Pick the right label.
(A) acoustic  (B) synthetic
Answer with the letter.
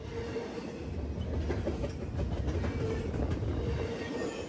A